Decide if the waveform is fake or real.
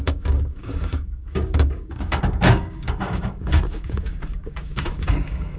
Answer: fake